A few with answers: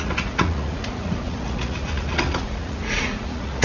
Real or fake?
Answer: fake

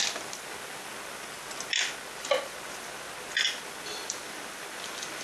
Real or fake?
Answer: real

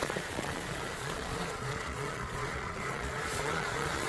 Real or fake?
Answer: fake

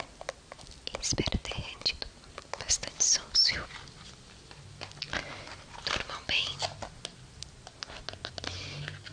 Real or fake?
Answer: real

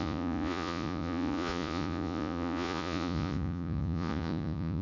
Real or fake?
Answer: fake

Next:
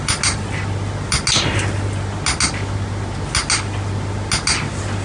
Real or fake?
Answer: real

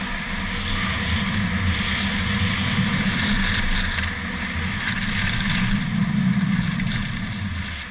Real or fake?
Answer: real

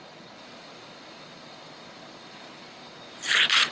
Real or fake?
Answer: real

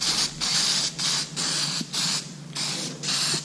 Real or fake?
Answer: real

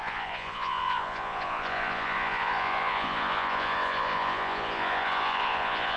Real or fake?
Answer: fake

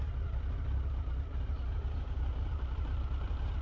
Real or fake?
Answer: real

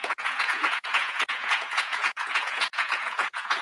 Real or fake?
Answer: fake